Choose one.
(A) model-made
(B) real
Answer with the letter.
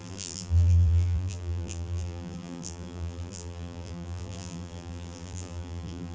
A